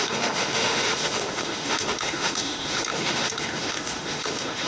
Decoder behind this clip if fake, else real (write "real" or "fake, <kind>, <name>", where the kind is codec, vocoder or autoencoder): fake, autoencoder, DAC-VAE